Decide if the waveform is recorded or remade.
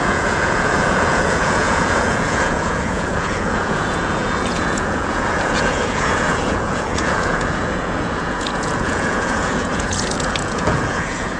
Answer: remade